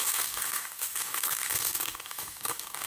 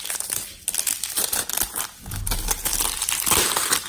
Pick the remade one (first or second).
first